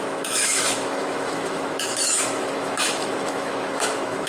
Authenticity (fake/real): fake